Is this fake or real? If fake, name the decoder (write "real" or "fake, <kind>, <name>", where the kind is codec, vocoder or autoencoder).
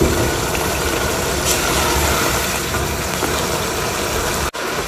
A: real